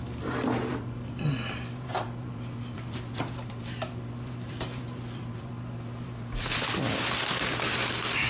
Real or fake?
fake